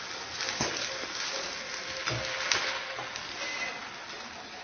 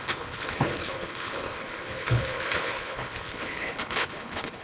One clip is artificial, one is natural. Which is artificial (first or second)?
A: second